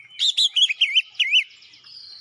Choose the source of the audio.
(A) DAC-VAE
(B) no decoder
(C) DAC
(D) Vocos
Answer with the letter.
B